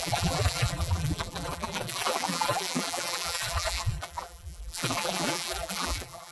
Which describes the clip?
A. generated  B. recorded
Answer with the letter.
A